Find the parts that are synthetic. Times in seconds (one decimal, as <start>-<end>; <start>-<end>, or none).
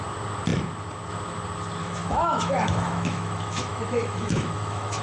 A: 1.8-5.0